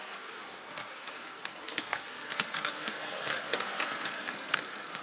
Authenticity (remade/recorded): remade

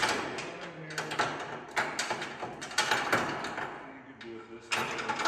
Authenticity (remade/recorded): recorded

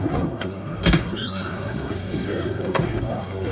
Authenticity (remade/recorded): remade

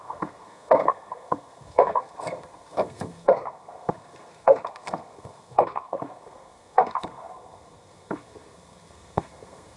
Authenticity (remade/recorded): remade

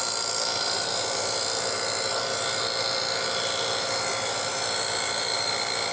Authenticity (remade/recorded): recorded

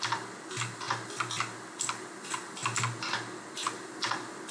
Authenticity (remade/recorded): recorded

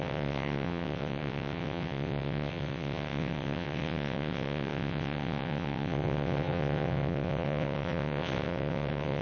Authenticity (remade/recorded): remade